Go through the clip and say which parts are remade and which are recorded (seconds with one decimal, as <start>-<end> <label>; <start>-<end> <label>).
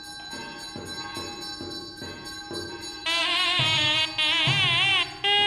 0.0-3.2 recorded; 3.2-4.0 remade; 4.0-5.5 recorded